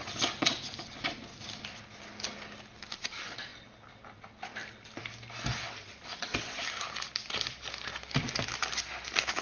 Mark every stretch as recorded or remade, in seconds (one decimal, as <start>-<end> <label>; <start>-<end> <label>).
0.0-9.4 recorded